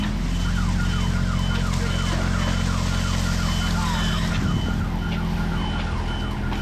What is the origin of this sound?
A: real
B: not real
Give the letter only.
A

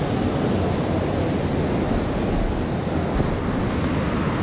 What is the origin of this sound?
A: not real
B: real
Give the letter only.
B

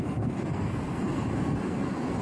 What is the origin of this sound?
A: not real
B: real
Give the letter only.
A